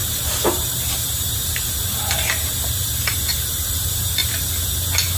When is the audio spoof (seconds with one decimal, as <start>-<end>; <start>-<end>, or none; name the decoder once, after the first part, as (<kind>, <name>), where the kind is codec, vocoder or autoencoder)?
0.0-4.2 (vocoder, BigVGAN v2)